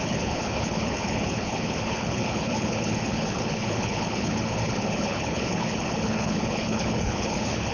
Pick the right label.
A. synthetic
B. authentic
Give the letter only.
A